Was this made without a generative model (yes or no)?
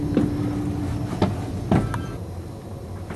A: yes